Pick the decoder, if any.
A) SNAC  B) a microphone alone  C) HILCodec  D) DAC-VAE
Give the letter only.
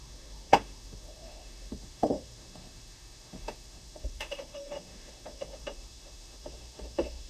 D